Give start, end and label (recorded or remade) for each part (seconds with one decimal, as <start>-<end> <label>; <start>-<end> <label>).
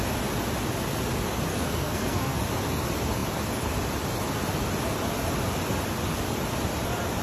0.0-1.5 recorded; 1.5-2.4 remade; 2.4-7.2 recorded